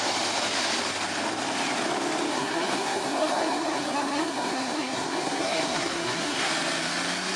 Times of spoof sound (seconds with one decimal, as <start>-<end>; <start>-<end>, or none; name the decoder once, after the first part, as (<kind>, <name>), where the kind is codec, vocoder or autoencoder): 2.3-6.5 (codec, SNAC)

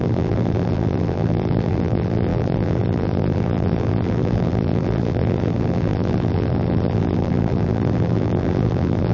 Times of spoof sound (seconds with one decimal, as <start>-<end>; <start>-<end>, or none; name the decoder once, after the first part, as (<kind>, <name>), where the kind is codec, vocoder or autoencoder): 0.0-9.1 (vocoder, BigVGAN v2)

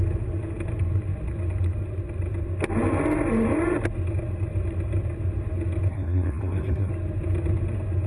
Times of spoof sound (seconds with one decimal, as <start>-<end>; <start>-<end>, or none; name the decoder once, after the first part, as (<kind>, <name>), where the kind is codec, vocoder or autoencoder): 5.9-6.9 (codec, SNAC)

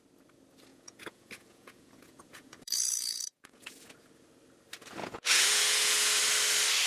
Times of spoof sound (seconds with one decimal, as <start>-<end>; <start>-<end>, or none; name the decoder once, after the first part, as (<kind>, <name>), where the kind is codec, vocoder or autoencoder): 0.7-3.9 (vocoder, Vocos); 5.0-6.2

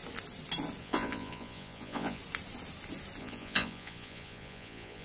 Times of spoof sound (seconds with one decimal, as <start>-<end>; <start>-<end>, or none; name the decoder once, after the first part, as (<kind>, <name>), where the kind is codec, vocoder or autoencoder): 0.8-2.2 (vocoder, Vocos); 3.2-5.0

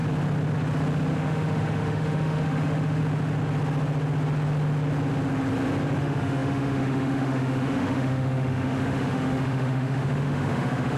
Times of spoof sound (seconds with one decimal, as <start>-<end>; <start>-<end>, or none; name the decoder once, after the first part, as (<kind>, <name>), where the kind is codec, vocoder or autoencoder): 1.1-3.0 (autoencoder, DAC-VAE); 6.0-11.0

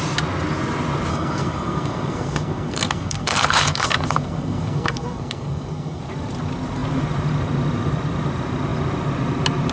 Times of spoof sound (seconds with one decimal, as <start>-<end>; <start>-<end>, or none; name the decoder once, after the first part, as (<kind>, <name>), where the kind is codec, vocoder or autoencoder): 1.1-6.0 (codec, SNAC)

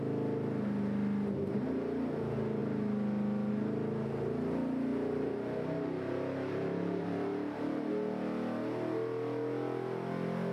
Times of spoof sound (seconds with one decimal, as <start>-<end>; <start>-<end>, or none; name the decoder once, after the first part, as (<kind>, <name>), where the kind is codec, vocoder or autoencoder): 4.9-7.9 (vocoder, BigVGAN v2)